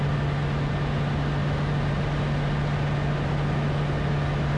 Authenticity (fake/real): real